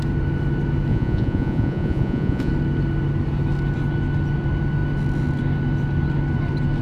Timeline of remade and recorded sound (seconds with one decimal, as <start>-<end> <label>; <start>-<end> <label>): 0.0-0.9 recorded; 0.9-2.5 remade; 2.5-6.8 recorded